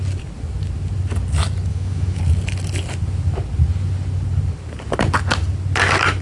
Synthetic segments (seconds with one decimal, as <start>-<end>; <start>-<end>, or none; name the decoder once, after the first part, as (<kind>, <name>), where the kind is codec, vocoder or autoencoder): 1.7-2.2 (autoencoder, DAC-VAE)